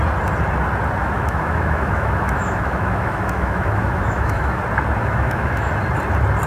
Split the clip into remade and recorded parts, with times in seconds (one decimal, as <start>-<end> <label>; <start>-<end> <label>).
0.0-1.0 recorded; 1.0-4.6 remade; 4.6-5.0 recorded; 5.0-5.7 remade; 5.7-6.5 recorded

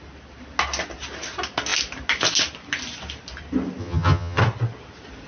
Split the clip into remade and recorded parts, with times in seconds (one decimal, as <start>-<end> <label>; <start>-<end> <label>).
0.0-3.8 recorded; 3.8-4.4 remade; 4.4-5.3 recorded

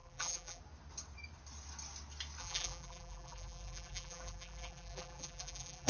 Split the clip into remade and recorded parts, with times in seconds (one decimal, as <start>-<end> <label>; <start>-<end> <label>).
0.0-0.6 remade; 0.6-2.4 recorded; 2.4-5.9 remade